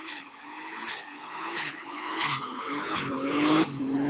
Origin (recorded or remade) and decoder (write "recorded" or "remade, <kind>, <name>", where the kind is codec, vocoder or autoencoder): remade, codec, HILCodec